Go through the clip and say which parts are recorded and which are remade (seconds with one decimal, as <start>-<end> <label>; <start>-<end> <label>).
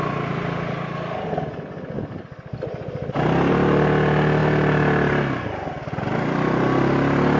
0.0-7.4 recorded